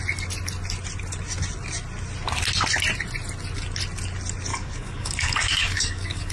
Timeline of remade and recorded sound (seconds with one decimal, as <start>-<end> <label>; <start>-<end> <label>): 0.0-4.5 recorded; 4.5-6.3 remade